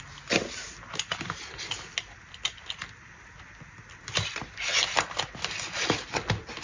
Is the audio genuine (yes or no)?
yes